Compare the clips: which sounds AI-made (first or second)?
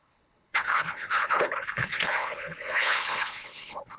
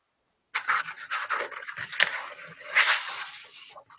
first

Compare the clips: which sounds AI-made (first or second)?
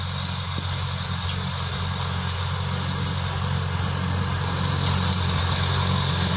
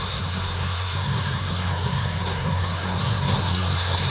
second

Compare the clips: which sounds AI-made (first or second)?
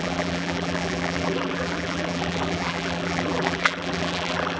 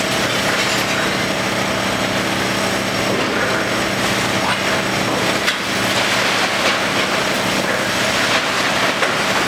first